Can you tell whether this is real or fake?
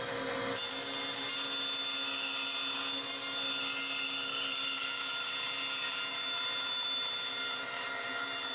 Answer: real